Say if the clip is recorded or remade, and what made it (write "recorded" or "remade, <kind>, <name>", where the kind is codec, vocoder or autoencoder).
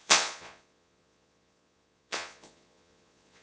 remade, vocoder, Vocos